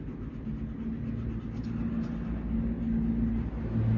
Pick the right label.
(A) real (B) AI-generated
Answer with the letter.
A